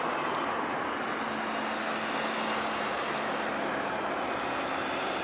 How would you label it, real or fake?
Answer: real